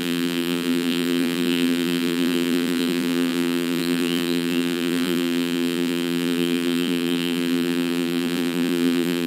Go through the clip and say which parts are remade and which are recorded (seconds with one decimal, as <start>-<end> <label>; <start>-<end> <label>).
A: 0.0-9.3 remade